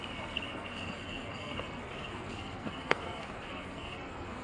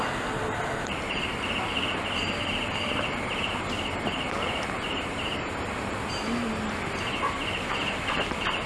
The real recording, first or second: second